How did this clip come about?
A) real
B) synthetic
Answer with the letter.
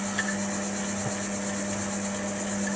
A